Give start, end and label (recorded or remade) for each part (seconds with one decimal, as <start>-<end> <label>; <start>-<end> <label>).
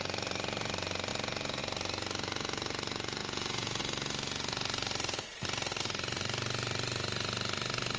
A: 0.0-1.1 recorded; 1.1-1.6 remade; 1.6-3.2 recorded; 3.2-3.8 remade; 3.8-8.0 recorded